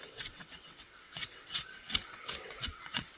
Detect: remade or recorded remade